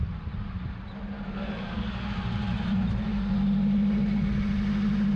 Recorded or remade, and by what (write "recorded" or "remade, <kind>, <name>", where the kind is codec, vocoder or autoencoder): recorded